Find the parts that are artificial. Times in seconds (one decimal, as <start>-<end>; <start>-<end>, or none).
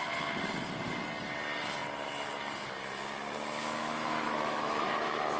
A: 3.8-5.4